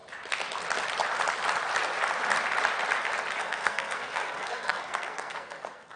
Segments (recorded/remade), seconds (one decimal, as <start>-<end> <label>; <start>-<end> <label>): 0.0-3.4 recorded; 3.4-6.0 remade